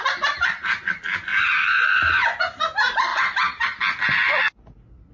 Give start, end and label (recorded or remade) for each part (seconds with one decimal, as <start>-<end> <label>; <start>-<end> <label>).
0.0-1.3 recorded; 1.3-2.4 remade; 2.4-5.1 recorded